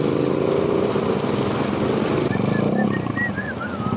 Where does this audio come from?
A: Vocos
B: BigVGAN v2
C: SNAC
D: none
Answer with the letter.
D